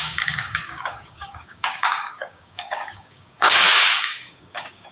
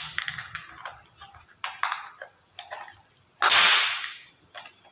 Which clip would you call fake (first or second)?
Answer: first